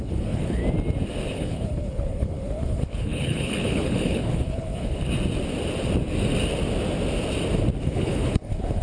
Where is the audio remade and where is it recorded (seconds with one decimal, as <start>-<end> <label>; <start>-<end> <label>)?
0.0-0.6 remade; 0.6-1.3 recorded; 1.3-5.0 remade; 5.0-7.8 recorded; 7.8-8.8 remade